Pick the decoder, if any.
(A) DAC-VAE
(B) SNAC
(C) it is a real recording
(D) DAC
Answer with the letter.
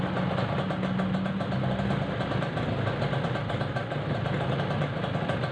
C